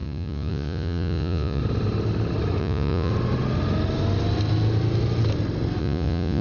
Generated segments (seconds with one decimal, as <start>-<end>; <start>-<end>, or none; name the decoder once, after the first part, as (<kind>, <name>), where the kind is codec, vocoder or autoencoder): 0.0-1.6 (vocoder, Vocos); 2.6-3.1; 5.8-6.4